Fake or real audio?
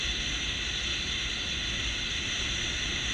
real